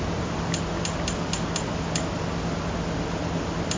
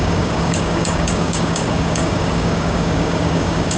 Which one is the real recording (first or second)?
first